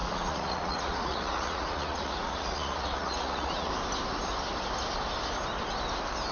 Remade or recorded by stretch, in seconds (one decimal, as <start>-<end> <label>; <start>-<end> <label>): 0.0-3.7 remade; 3.7-6.3 recorded